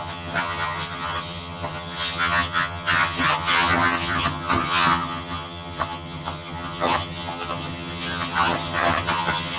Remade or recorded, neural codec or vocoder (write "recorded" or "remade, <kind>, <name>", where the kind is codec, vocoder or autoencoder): remade, vocoder, HiFi-GAN